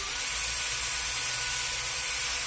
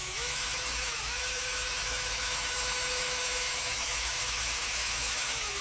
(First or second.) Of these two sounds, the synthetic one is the second